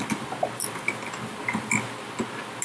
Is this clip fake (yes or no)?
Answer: no